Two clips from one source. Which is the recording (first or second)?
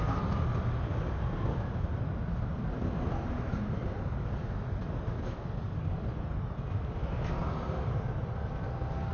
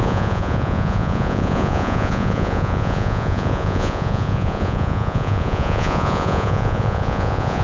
first